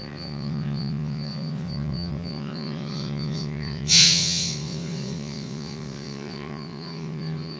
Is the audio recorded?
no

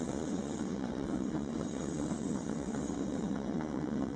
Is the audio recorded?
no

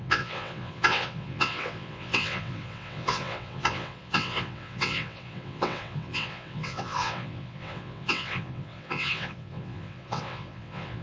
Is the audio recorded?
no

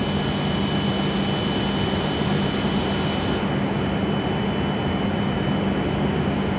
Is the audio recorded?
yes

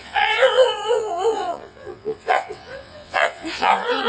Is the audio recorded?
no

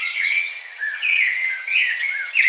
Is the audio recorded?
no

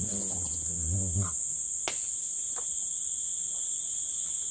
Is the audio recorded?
yes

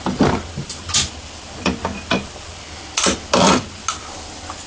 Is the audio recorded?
yes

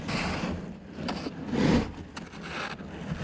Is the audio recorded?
yes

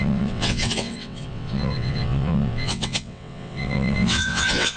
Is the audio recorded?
no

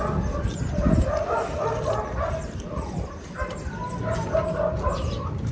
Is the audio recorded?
yes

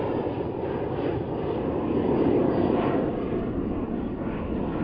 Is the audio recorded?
yes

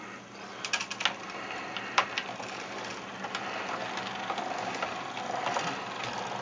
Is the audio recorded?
yes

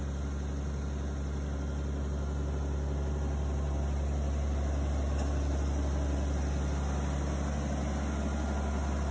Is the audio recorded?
yes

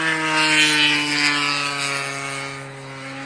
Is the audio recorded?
yes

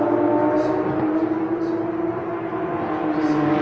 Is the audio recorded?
yes